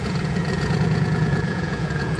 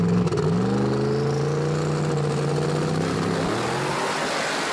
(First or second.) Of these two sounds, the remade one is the first